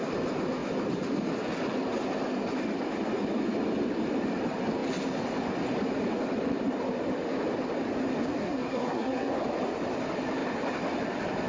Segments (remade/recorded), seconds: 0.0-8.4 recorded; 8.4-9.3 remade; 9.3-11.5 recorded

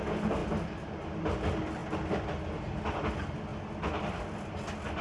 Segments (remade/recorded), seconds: 0.0-5.0 recorded